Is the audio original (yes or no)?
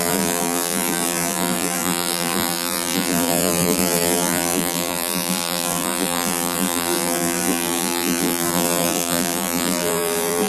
no